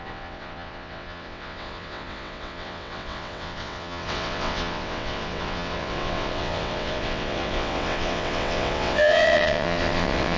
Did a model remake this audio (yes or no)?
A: yes